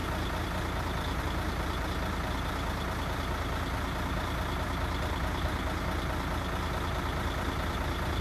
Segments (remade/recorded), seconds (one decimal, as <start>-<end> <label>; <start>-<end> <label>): 0.0-8.2 recorded